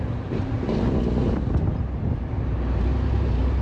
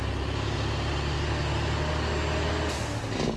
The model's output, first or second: first